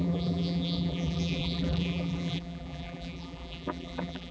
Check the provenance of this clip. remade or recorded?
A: remade